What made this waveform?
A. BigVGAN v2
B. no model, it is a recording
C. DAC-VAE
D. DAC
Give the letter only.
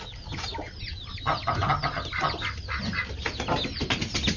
B